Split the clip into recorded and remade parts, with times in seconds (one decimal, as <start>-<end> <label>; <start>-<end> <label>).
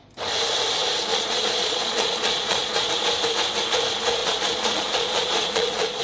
0.0-1.1 recorded; 1.1-2.9 remade; 2.9-4.2 recorded; 4.2-6.0 remade